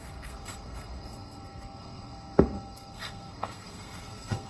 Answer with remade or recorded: remade